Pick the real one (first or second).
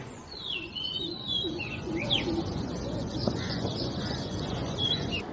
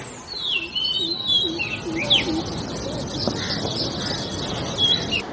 second